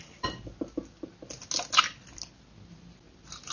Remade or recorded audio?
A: recorded